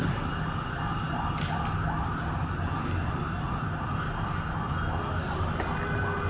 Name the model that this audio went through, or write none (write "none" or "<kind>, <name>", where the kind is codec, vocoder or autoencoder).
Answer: none